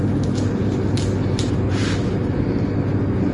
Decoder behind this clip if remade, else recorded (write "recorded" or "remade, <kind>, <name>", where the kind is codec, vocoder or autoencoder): recorded